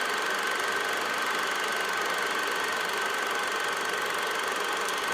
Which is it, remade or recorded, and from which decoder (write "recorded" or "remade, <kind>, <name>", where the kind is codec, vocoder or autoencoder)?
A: recorded